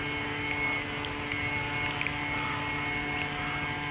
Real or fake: real